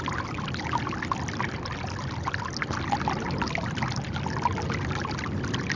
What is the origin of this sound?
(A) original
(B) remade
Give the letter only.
A